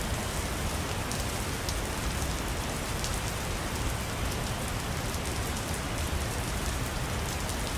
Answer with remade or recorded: recorded